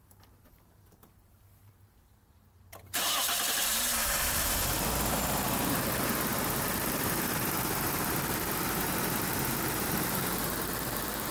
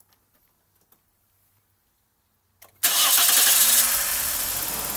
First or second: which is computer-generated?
first